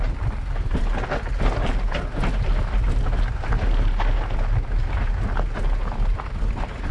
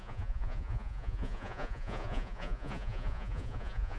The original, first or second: first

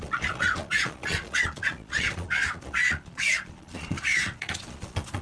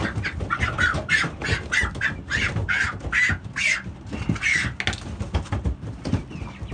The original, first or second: second